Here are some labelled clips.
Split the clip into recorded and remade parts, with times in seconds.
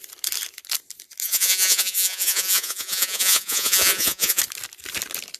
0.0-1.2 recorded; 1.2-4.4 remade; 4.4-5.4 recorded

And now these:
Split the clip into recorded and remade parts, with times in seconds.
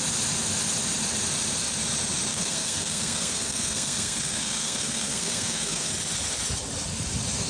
0.0-2.3 recorded; 2.3-5.9 remade; 5.9-7.5 recorded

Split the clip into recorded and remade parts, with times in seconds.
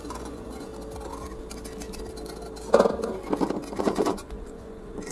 0.0-0.7 remade; 0.7-3.8 recorded; 3.8-5.1 remade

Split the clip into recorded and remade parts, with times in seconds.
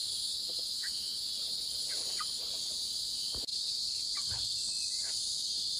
0.0-1.3 remade; 1.3-5.8 recorded